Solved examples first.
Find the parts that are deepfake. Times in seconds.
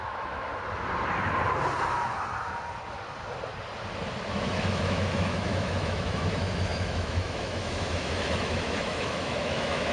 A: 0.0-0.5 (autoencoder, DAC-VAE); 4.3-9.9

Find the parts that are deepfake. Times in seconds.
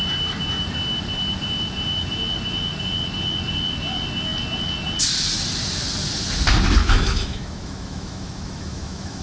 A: 6.8-9.2 (autoencoder, DAC-VAE)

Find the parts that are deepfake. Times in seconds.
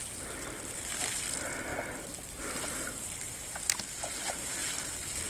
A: none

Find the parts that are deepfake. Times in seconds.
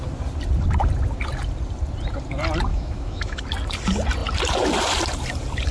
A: 2.7-3.4 (autoencoder, DAC-VAE)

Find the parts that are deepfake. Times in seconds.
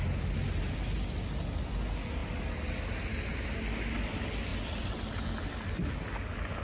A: none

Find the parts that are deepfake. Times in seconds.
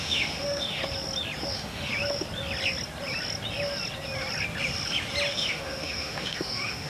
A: 0.0-0.8 (autoencoder, DAC-VAE); 1.5-1.9; 5.3-6.9